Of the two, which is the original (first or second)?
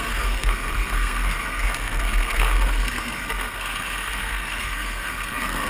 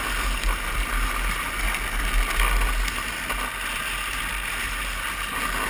second